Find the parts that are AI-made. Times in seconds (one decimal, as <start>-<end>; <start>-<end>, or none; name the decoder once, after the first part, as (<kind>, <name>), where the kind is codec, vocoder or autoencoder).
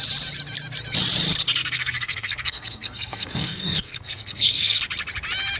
1.6-4.8 (codec, SNAC)